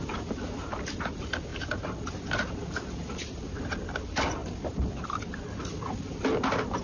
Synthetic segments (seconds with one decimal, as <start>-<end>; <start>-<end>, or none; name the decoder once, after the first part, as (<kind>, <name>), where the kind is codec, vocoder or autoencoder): none

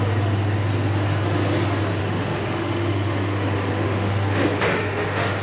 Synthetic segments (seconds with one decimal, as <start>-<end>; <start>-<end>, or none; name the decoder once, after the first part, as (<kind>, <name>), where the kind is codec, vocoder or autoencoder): 2.0-5.4 (autoencoder, DAC-VAE)

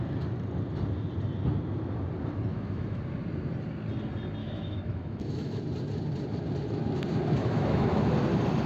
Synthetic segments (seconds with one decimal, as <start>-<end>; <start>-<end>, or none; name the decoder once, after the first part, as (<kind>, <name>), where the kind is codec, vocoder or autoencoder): 2.5-3.0 (autoencoder, DAC-VAE); 4.4-5.6; 7.4-8.0

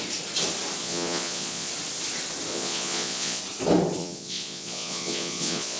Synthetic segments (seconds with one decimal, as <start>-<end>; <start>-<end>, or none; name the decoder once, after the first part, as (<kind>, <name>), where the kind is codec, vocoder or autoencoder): 0.8-1.7 (vocoder, Vocos); 2.5-3.4; 4.0-5.8

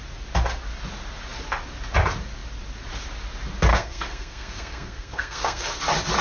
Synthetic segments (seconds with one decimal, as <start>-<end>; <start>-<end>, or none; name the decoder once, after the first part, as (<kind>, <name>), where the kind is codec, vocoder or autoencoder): 3.7-5.8 (codec, SNAC)